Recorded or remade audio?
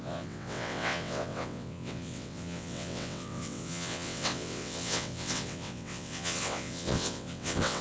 remade